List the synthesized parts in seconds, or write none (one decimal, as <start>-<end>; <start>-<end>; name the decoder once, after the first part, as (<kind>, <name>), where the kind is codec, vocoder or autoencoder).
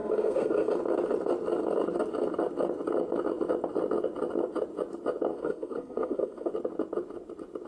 0.0-0.7 (codec, SNAC); 5.3-6.5